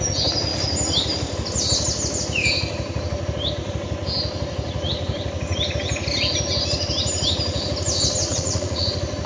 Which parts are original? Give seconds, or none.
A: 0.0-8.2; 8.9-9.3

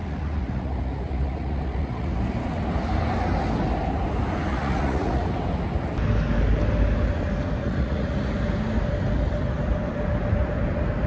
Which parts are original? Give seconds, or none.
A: 2.2-4.5; 5.2-7.6; 8.3-11.1